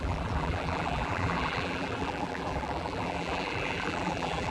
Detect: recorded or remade remade